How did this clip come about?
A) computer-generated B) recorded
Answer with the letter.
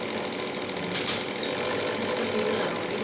B